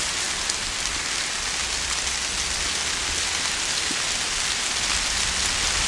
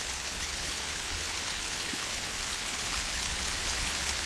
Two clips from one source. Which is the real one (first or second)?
first